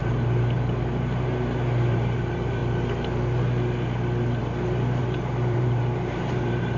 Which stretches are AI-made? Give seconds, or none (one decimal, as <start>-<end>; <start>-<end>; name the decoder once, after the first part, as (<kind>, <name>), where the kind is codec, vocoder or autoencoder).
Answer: 0.0-2.6 (vocoder, BigVGAN v2); 4.4-6.8